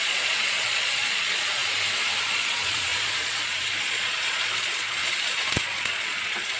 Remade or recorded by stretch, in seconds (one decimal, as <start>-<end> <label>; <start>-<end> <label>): 0.0-1.6 remade; 1.6-2.2 recorded; 2.2-6.6 remade